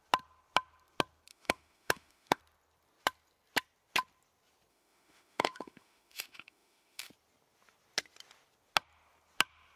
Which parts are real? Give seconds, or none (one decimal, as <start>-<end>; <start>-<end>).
0.0-1.3; 2.4-4.7; 7.1-9.8